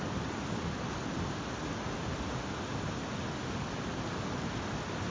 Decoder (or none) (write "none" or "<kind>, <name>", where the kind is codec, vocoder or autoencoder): none